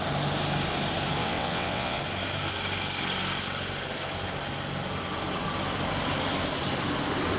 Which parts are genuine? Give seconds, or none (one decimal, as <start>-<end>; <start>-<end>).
0.0-1.2; 2.0-7.4